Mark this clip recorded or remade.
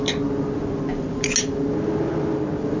recorded